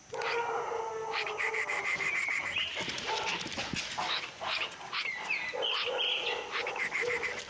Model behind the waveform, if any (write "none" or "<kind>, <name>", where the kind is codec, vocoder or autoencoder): none